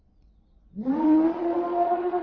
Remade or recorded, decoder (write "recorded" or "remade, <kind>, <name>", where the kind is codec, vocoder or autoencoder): remade, vocoder, Vocos